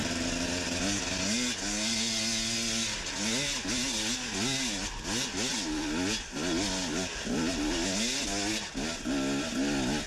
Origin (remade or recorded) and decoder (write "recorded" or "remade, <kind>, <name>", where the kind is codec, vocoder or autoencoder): recorded